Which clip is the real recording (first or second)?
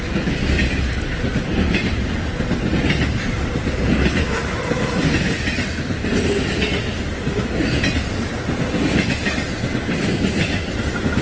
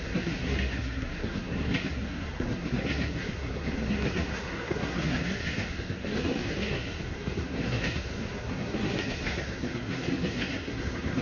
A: first